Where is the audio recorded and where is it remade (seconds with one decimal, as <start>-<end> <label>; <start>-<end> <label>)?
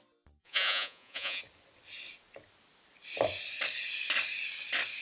0.0-0.4 recorded; 0.4-1.4 remade; 1.4-5.0 recorded